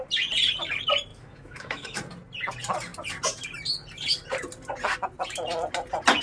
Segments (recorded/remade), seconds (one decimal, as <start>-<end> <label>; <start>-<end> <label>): 0.0-1.1 recorded; 1.1-2.0 remade; 2.0-6.2 recorded